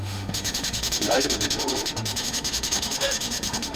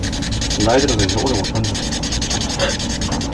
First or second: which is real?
second